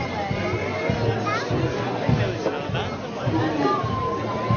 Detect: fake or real real